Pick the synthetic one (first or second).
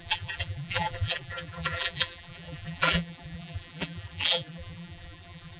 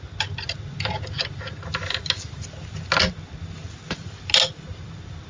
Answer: first